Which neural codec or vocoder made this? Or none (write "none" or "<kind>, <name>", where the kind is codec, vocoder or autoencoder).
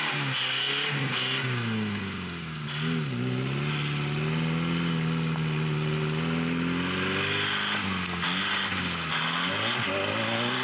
none